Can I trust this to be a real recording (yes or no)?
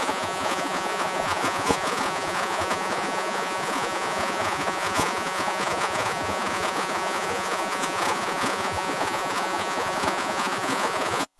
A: no